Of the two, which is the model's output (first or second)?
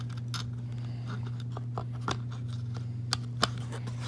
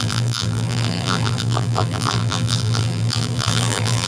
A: second